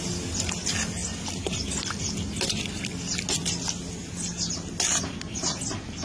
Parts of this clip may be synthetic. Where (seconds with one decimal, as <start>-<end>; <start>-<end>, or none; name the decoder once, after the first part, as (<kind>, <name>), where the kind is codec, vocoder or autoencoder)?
none